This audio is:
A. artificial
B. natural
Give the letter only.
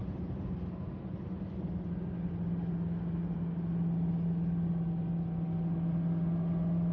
B